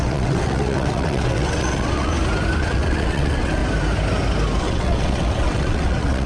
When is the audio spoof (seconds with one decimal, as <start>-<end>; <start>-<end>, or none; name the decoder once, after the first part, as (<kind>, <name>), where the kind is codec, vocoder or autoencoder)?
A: 0.0-2.1 (vocoder, WaveNeXt); 2.6-3.6; 4.6-6.3